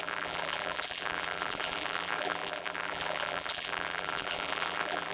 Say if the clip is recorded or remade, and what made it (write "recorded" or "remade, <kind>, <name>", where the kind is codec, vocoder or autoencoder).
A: remade, vocoder, BigVGAN v2